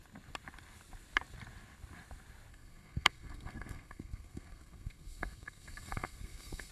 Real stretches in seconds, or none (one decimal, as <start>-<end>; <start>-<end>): 0.0-2.5